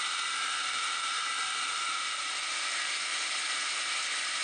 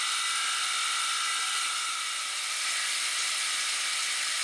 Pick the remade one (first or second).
first